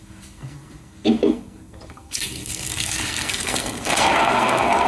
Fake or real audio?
fake